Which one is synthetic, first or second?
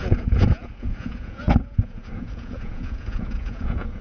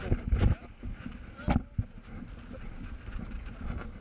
first